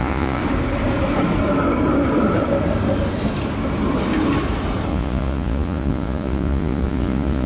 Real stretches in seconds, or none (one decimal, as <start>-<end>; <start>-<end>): 0.4-4.9